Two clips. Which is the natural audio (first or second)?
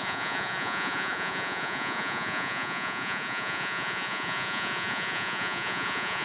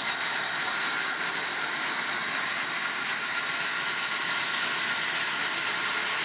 second